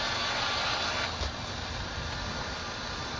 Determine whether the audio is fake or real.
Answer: real